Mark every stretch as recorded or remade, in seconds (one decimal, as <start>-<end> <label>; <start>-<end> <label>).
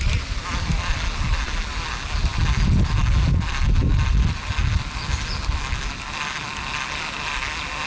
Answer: 0.0-7.9 recorded